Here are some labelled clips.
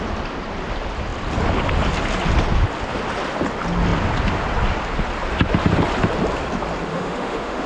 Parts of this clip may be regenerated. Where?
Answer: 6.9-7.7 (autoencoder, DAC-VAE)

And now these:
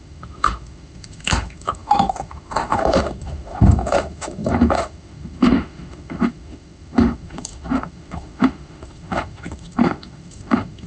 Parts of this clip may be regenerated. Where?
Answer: 0.0-10.9 (autoencoder, DAC-VAE)